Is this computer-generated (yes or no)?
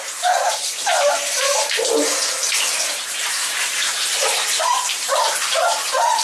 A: yes